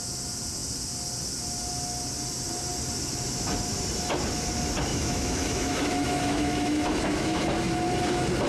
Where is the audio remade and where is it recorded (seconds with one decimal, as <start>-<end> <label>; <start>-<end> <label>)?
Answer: 0.0-4.9 recorded; 4.9-7.4 remade; 7.4-8.5 recorded